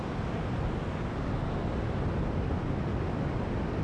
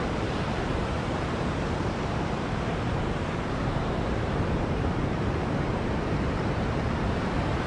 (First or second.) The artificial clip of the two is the second